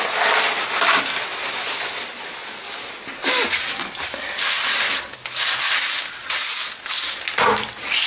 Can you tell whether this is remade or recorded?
recorded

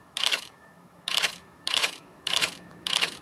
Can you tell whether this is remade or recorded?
remade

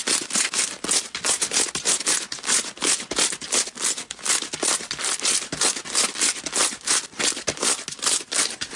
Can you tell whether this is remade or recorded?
recorded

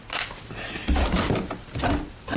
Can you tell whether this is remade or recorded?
recorded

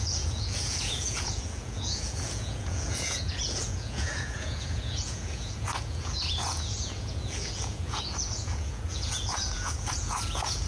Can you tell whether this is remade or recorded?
remade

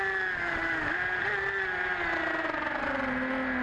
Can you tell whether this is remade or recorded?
recorded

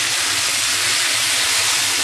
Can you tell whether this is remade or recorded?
recorded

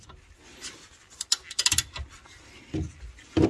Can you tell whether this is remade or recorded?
recorded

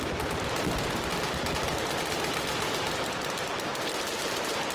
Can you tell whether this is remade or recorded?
recorded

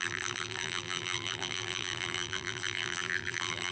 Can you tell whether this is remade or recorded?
remade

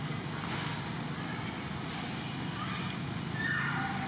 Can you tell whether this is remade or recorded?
recorded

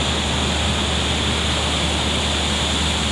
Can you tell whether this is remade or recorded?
recorded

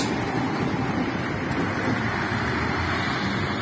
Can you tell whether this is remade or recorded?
recorded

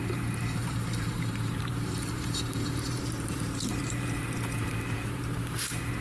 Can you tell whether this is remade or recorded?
remade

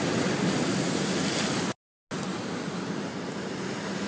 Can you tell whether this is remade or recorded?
recorded